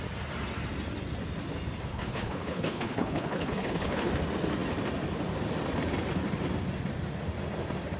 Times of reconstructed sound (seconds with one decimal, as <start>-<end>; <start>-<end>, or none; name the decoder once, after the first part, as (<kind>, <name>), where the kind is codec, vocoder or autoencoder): 1.9-4.1 (codec, HILCodec)